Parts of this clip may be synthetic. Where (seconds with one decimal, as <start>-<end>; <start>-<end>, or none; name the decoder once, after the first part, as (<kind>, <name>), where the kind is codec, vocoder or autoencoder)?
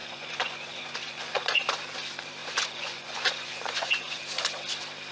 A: 0.0-1.7 (vocoder, Vocos); 2.4-4.2